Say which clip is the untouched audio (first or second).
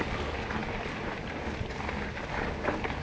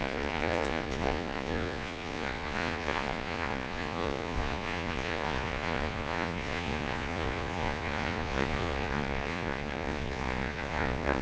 first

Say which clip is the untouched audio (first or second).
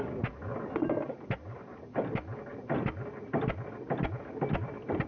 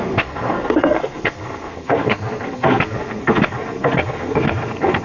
first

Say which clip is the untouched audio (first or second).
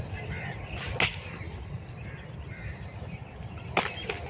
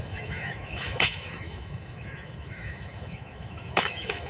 first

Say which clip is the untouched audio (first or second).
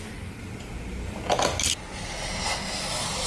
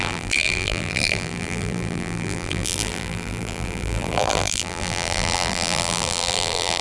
first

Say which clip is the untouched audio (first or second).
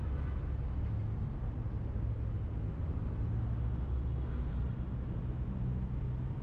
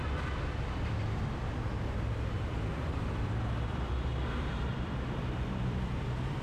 first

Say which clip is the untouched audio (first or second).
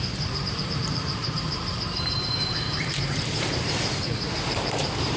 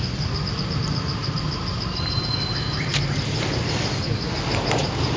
second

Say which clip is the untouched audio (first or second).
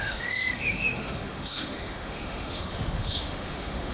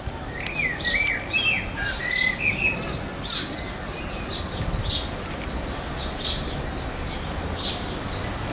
second